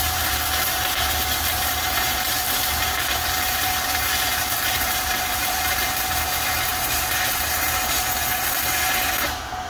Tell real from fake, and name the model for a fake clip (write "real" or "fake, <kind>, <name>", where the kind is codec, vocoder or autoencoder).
fake, vocoder, BigVGAN v2